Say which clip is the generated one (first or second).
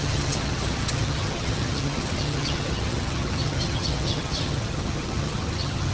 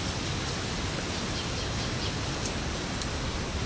first